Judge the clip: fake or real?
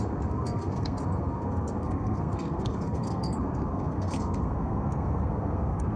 fake